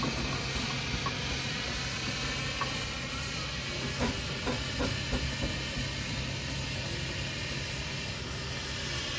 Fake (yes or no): no